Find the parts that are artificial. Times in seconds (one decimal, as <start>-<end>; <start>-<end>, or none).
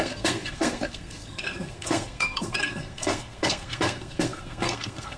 0.0-5.2